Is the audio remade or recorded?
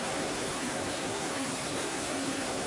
remade